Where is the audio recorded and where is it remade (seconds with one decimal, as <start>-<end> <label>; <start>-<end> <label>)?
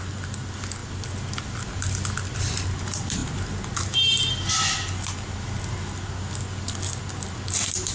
0.0-7.9 recorded